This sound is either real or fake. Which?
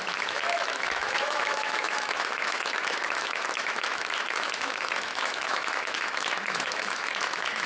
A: fake